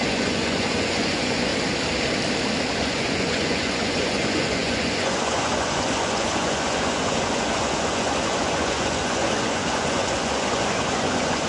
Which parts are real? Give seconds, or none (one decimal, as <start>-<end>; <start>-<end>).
1.5-2.7

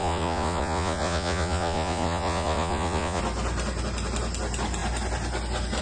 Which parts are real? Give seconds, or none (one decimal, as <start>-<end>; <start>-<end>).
3.2-5.8

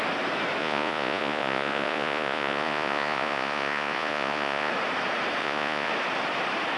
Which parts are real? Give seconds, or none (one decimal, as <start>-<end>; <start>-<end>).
0.0-0.6; 4.7-5.4; 5.9-6.8

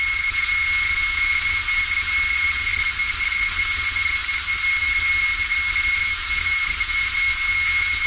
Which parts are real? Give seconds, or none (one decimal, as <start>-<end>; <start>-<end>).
2.7-3.4; 4.2-6.0

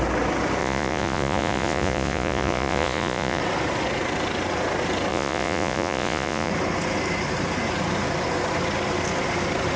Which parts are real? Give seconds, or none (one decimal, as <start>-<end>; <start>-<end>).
0.0-0.6; 3.4-5.1; 6.5-9.8

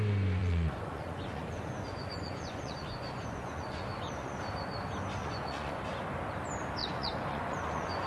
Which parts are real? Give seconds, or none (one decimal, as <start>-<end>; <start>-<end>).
0.0-0.4; 4.4-5.2; 5.8-6.8

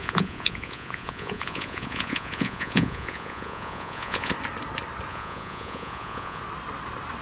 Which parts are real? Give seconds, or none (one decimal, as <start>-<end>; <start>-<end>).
4.3-5.1; 6.4-7.2

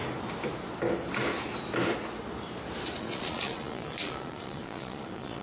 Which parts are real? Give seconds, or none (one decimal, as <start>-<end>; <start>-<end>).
0.0-3.0